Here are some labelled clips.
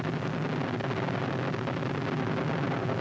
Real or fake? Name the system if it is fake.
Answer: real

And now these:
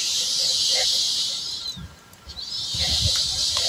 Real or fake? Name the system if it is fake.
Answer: fake, vocoder, BigVGAN v2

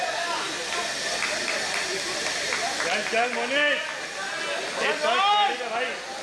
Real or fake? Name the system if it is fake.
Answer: real